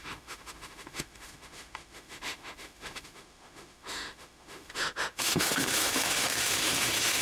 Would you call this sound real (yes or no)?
no